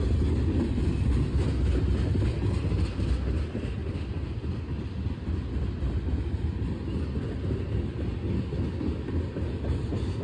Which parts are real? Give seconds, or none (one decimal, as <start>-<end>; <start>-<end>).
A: 0.0-10.2